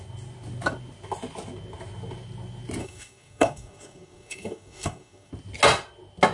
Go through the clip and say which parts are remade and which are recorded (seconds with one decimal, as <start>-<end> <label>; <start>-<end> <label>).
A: 0.0-2.8 recorded; 2.8-5.3 remade; 5.3-6.3 recorded